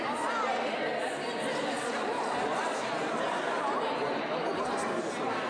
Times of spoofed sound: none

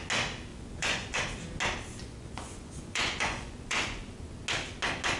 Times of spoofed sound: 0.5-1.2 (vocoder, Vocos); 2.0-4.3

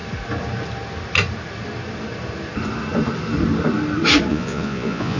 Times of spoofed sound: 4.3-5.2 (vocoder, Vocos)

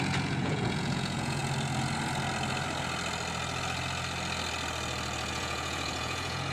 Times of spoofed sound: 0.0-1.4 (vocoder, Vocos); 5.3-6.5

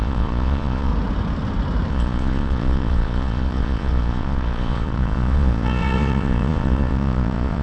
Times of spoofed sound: 0.0-0.9 (vocoder, Vocos); 1.9-7.6